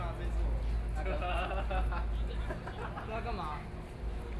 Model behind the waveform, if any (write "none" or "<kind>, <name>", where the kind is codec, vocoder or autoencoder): none